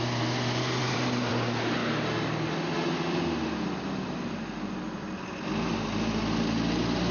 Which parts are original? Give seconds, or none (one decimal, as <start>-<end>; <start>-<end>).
0.0-0.8; 1.3-7.1